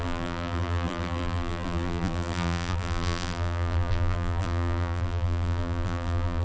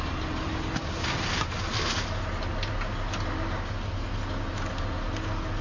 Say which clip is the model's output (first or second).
first